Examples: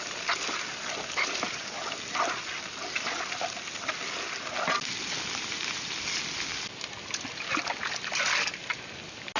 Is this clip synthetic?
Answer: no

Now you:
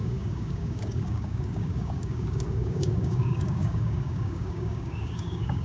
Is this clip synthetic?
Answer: yes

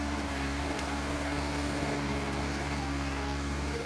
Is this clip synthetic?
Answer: yes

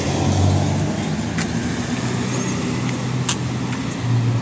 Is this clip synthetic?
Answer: no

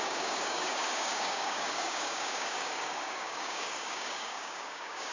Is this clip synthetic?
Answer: yes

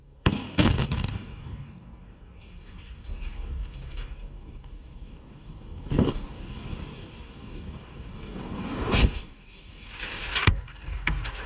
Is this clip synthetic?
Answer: yes